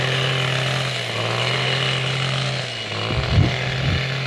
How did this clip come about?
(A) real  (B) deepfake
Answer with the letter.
A